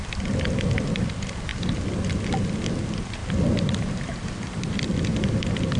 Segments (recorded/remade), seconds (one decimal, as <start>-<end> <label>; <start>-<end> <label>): 0.0-1.5 recorded; 1.5-2.1 remade; 2.1-3.2 recorded; 3.2-4.9 remade; 4.9-5.8 recorded

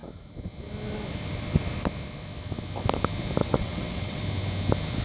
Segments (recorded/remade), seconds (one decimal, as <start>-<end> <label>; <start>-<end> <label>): 0.0-3.4 recorded; 3.4-4.2 remade; 4.2-5.0 recorded

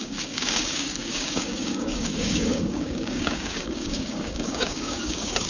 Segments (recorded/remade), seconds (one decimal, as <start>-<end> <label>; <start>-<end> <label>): 0.0-5.5 remade

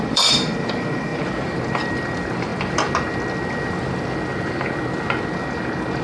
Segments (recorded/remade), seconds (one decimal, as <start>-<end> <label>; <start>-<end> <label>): 0.0-2.5 remade; 2.5-6.0 recorded

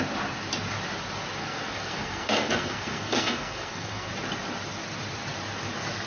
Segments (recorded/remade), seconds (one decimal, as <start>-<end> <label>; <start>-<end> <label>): 0.0-1.4 recorded; 1.4-4.1 remade; 4.1-6.1 recorded